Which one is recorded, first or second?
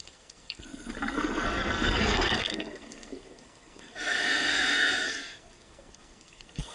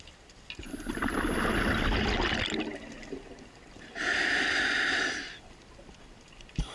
second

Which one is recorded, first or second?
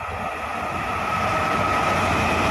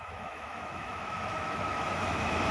first